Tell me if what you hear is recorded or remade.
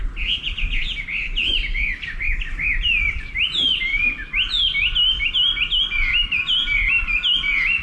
recorded